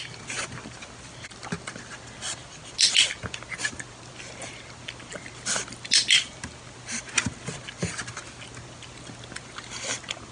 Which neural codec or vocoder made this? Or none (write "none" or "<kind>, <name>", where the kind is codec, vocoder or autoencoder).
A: none